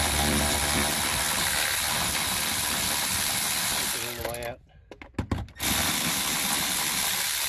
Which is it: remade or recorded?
recorded